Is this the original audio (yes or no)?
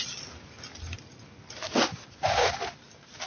yes